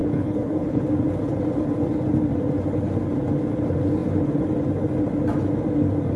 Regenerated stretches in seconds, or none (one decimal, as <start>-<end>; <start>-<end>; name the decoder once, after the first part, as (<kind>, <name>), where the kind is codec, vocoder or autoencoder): 0.0-0.8 (codec, HILCodec)